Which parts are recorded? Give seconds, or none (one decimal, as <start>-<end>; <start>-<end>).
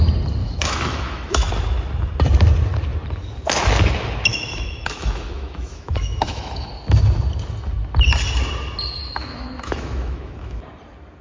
0.0-0.4; 1.5-4.3; 6.7-9.0; 10.6-11.2